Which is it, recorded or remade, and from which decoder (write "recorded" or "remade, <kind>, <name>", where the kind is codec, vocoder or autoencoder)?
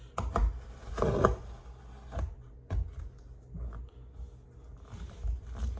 recorded